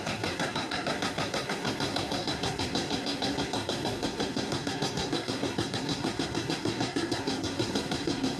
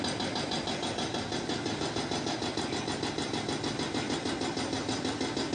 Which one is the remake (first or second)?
first